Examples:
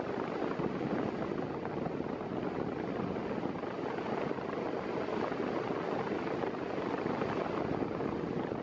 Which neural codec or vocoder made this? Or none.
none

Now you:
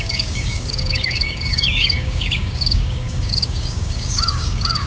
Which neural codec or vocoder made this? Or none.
codec, DAC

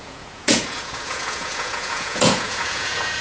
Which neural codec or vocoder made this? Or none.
vocoder, Vocos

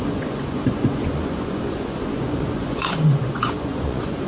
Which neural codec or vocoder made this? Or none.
vocoder, Vocos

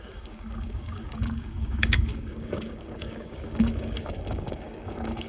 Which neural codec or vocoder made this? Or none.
codec, DAC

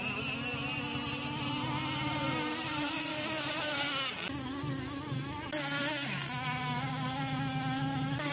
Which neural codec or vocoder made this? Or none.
none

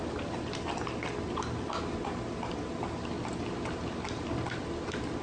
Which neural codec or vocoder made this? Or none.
none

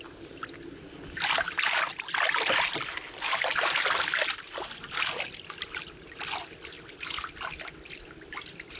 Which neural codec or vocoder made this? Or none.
none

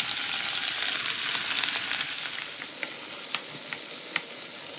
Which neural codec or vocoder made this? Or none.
none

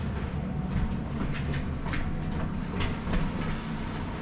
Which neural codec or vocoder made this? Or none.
none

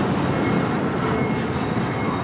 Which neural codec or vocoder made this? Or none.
none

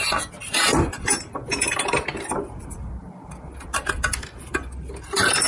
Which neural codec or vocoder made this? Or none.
none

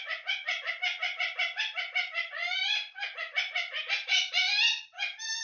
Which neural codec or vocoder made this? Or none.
none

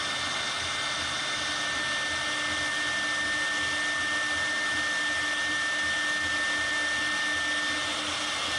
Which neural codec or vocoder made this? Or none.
none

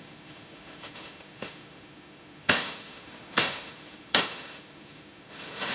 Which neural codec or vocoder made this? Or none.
autoencoder, DAC-VAE